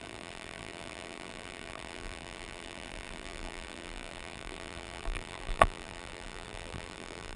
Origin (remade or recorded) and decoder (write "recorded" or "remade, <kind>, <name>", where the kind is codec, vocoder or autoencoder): remade, vocoder, BigVGAN v2